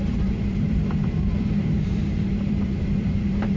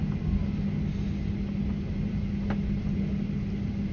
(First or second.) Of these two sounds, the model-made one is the first